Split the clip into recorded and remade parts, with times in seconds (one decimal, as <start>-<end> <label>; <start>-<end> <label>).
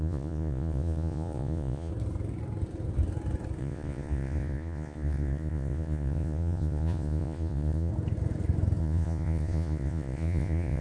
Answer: 0.0-1.9 remade; 1.9-3.6 recorded; 3.6-7.9 remade; 7.9-8.8 recorded; 8.8-10.8 remade